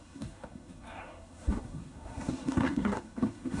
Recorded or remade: remade